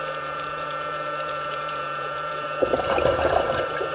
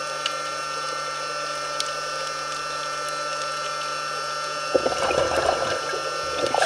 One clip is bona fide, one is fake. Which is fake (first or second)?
first